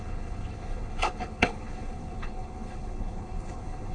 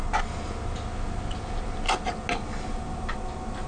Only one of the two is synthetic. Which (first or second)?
first